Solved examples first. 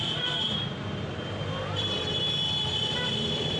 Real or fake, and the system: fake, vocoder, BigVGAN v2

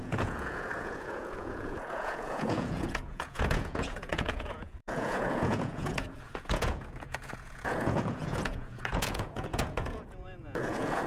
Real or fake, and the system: fake, vocoder, Vocos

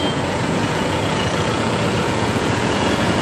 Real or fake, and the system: fake, vocoder, Vocos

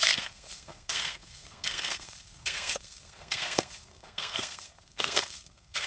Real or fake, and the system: fake, codec, SNAC